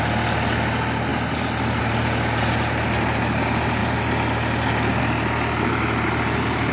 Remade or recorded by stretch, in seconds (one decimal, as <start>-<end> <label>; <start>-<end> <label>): 0.0-6.7 recorded